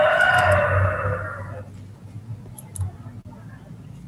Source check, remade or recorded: recorded